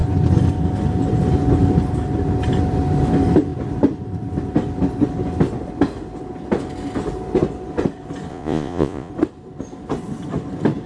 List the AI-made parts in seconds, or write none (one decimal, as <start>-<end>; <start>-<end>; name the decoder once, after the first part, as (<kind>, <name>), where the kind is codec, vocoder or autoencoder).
8.3-9.1 (vocoder, Vocos)